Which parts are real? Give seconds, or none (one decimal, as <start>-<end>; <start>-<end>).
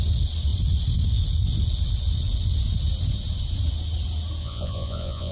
0.0-4.4